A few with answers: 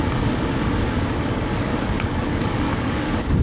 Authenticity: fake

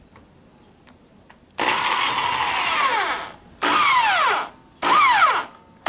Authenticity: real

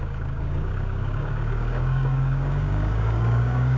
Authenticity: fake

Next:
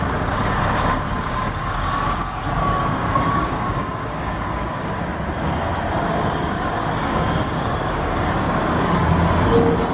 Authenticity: fake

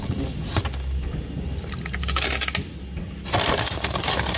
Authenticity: real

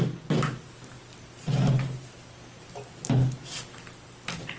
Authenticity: real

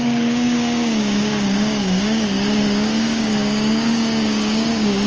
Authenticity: fake